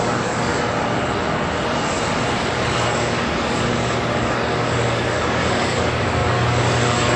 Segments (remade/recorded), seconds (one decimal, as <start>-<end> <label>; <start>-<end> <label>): 0.0-0.5 remade; 0.5-2.5 recorded; 2.5-7.2 remade